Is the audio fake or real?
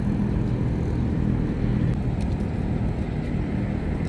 real